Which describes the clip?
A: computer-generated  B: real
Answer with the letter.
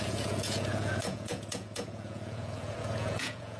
A